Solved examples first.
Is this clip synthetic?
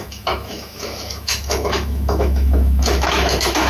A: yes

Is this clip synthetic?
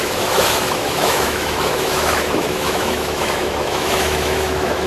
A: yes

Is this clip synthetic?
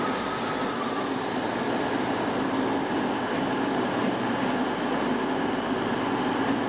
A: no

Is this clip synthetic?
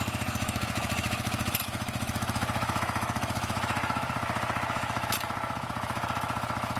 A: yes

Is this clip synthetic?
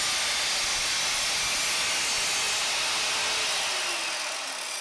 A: no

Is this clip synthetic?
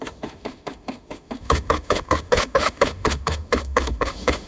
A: yes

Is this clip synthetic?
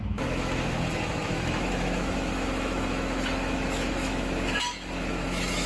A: yes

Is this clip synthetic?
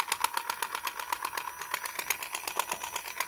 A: no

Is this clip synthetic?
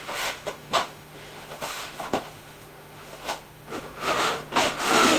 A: yes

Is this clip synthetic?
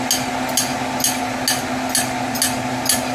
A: no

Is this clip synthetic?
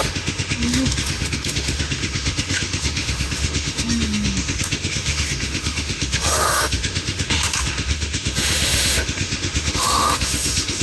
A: yes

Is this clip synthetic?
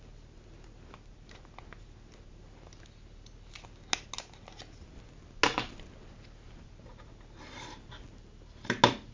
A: no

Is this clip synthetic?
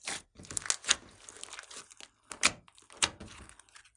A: no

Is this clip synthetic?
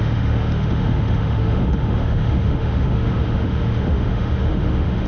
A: yes